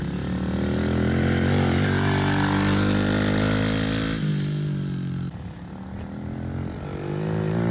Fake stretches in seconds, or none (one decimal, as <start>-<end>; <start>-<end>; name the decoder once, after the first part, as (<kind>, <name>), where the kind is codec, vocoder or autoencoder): none